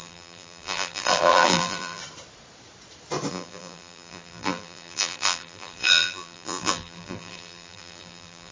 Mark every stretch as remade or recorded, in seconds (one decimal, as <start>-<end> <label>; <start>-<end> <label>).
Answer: 0.0-2.0 remade; 2.0-3.3 recorded; 3.3-8.5 remade